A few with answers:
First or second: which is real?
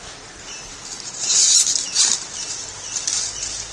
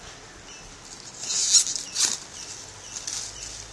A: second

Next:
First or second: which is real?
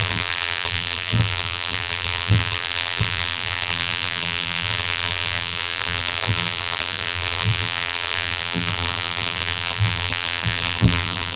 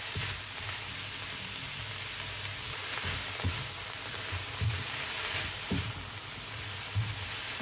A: second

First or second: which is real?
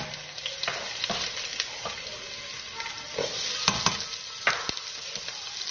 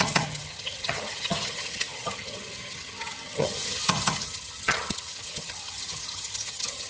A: first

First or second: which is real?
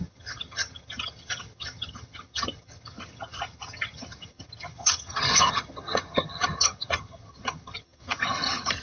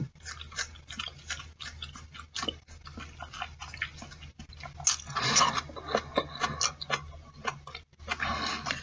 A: second